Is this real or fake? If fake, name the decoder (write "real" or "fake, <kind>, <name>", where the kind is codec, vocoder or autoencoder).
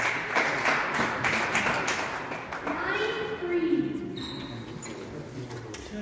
real